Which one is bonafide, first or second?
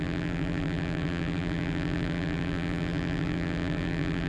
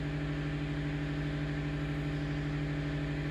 second